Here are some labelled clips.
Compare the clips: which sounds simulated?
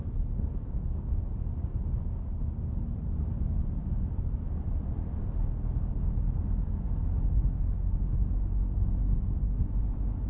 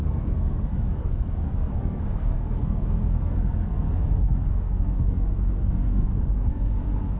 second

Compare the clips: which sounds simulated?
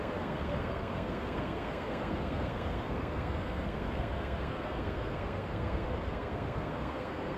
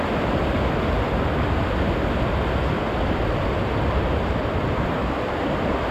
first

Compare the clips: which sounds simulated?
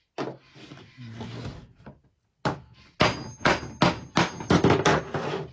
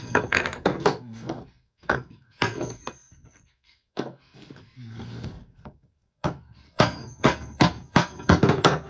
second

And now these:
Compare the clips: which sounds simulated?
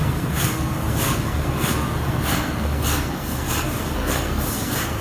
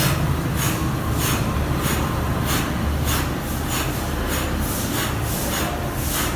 first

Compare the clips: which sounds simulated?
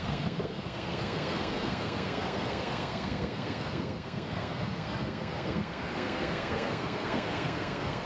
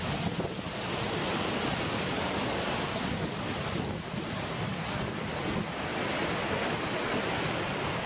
first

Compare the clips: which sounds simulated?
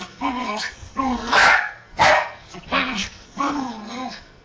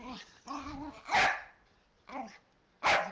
first